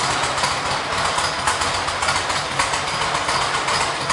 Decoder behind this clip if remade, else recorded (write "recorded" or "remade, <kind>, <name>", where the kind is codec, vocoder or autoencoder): recorded